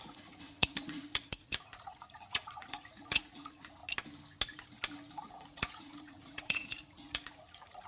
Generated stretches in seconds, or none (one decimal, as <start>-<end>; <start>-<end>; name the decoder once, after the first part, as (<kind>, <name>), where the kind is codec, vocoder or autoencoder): 0.0-3.8 (vocoder, Vocos); 5.1-7.9